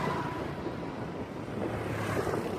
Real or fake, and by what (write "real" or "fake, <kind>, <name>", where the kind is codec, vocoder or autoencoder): real